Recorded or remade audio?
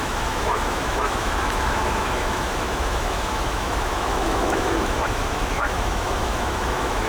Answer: remade